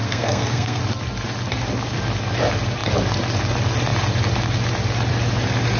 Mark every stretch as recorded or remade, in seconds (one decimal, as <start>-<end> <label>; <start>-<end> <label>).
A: 0.0-0.8 remade; 0.8-5.8 recorded